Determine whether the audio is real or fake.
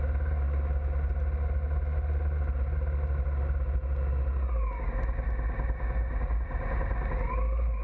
real